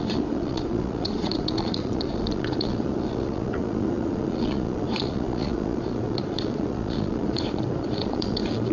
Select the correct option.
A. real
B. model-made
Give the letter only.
B